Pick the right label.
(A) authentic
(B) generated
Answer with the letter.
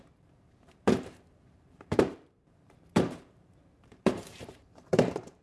B